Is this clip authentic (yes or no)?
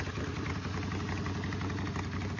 yes